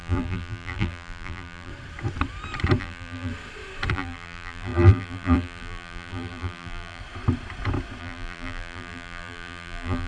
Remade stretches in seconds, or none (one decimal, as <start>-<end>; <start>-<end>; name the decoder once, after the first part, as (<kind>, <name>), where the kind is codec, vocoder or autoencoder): 0.0-1.7 (vocoder, BigVGAN v2); 2.8-3.3; 3.9-7.0; 8.0-10.1